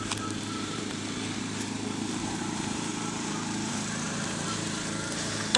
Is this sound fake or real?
fake